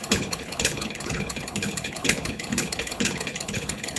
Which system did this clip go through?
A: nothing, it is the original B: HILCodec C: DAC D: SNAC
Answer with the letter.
B